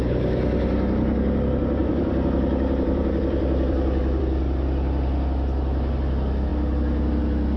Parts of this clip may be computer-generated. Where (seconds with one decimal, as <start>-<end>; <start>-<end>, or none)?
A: 1.8-4.2